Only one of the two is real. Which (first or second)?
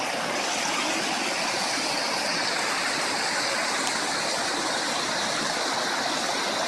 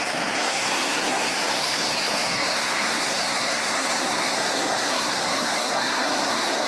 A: first